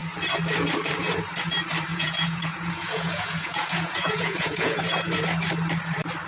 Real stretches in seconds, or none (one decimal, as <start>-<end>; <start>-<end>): 0.0-1.9; 4.8-6.3

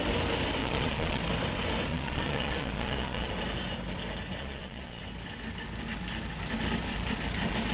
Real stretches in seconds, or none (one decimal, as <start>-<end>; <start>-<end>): 0.0-0.6; 1.2-1.9; 3.3-4.4; 5.0-7.7